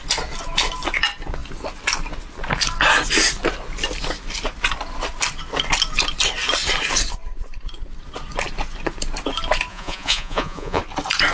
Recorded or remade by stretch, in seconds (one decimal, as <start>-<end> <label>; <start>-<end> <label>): 0.0-9.7 recorded; 9.7-10.8 remade; 10.8-11.3 recorded

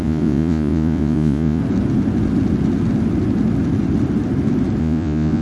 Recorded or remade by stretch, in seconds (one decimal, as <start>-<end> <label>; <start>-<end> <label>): 0.0-1.6 remade; 1.6-4.8 recorded; 4.8-5.4 remade

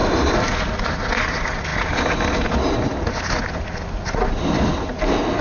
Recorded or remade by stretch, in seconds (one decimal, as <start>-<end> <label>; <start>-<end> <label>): 0.0-5.4 recorded

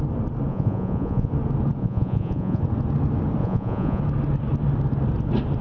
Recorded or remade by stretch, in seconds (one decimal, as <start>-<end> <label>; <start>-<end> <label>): 0.0-0.5 recorded; 0.5-1.3 remade; 1.3-1.8 recorded; 1.8-2.6 remade; 2.6-3.4 recorded; 3.4-4.0 remade; 4.0-5.6 recorded

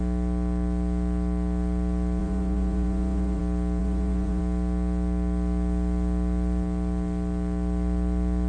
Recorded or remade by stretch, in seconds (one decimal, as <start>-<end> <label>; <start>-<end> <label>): 0.0-2.2 recorded; 2.2-3.4 remade; 3.4-3.8 recorded; 3.8-4.4 remade; 4.4-8.5 recorded